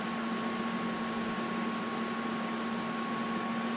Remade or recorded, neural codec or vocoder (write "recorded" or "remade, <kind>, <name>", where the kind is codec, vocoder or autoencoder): recorded